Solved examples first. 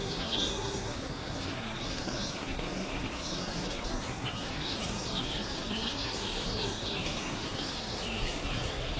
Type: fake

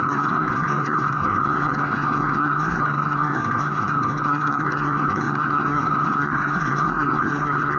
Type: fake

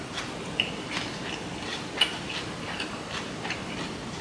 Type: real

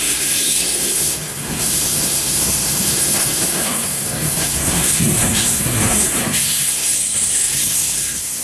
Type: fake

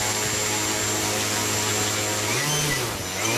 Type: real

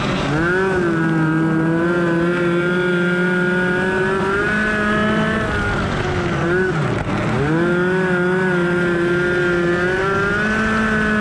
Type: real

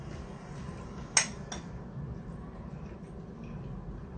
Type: real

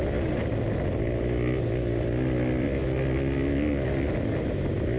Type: real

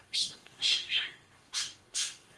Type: fake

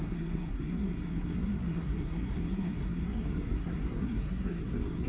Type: fake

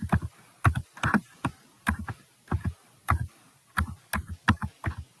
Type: real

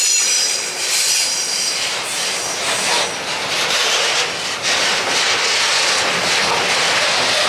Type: real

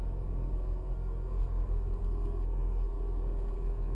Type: fake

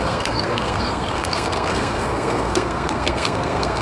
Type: fake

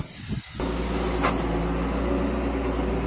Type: real